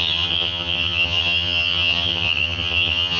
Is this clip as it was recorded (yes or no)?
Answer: no